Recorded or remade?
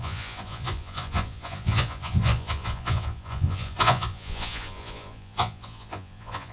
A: remade